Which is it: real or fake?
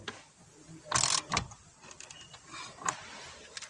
real